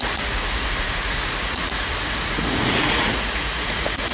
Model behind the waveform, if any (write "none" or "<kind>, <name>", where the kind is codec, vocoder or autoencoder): vocoder, Vocos